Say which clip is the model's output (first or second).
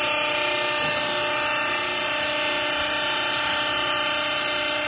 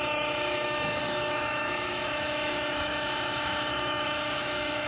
second